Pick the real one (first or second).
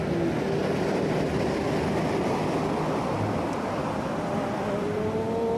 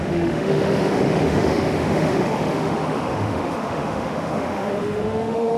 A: first